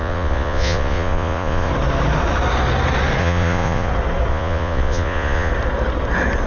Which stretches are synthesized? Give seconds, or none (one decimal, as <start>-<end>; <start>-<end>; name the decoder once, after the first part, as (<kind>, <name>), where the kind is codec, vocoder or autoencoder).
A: 0.0-1.7 (vocoder, Vocos); 3.2-3.9; 4.3-5.5